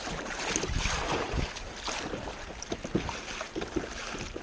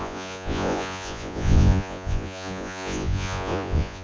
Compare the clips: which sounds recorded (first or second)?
first